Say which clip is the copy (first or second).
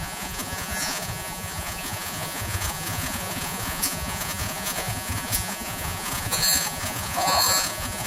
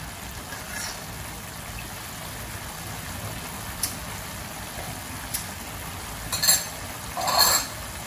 first